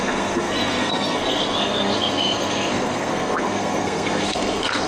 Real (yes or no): no